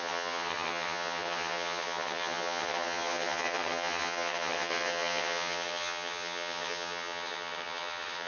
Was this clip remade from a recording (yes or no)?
yes